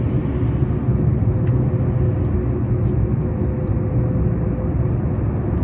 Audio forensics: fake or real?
real